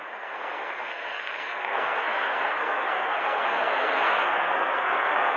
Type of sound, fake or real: fake